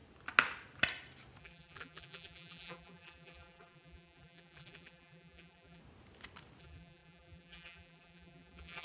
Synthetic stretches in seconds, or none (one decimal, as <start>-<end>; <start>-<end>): 1.4-5.8; 6.6-8.8